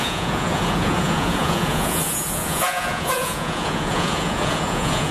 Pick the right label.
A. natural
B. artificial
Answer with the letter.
B